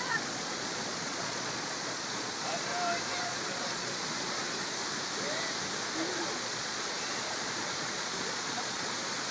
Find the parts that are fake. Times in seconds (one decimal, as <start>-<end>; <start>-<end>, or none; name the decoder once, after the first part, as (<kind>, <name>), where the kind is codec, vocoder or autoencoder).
0.0-2.7 (vocoder, Vocos); 3.2-4.8; 6.2-9.3